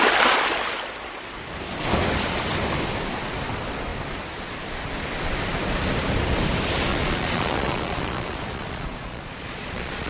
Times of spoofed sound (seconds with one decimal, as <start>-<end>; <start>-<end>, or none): 6.9-10.1